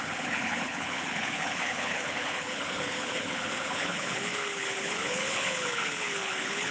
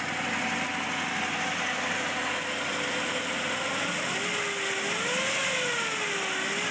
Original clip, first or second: second